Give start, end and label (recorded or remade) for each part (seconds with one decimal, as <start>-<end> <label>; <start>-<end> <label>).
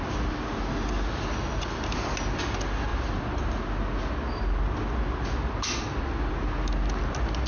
0.0-7.5 recorded